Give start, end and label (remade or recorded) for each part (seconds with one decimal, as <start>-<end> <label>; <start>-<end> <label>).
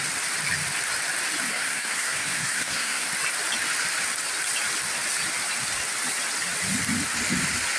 0.0-1.5 recorded; 1.5-3.1 remade; 3.1-7.8 recorded